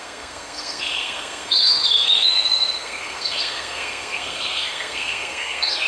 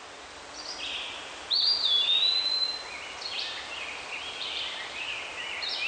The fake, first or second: first